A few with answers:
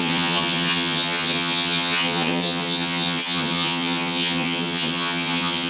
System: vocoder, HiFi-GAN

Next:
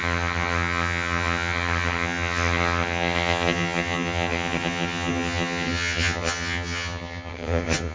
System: vocoder, HiFi-GAN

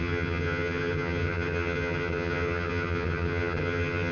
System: vocoder, HiFi-GAN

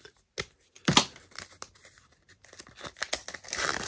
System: none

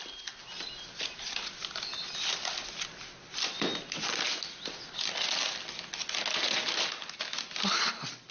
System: none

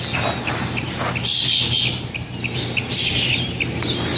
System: none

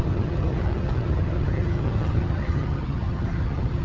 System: vocoder, HiFi-GAN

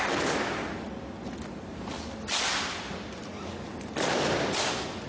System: none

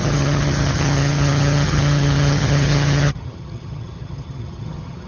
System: vocoder, HiFi-GAN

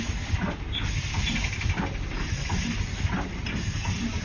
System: none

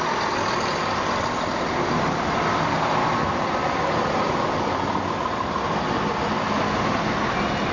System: none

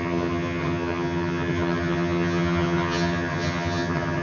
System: vocoder, HiFi-GAN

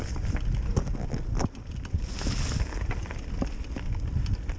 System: none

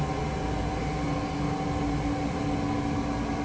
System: none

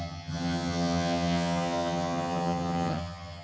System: vocoder, HiFi-GAN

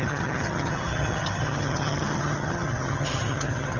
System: vocoder, HiFi-GAN